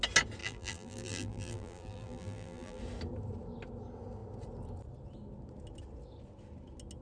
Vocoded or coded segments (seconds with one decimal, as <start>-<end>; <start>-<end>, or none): 0.4-2.8